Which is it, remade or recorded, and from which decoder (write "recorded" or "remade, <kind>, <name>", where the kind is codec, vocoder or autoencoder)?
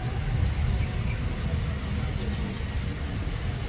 recorded